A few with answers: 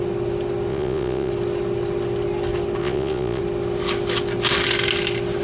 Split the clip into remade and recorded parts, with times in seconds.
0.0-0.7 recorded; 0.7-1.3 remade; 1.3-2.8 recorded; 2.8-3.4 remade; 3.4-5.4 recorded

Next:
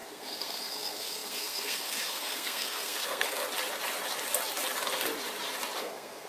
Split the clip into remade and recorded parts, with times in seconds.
0.0-3.4 remade; 3.4-5.8 recorded; 5.8-6.3 remade

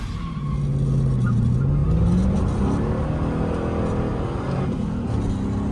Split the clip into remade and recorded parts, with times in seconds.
0.0-5.7 recorded